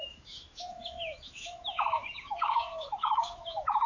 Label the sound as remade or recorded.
remade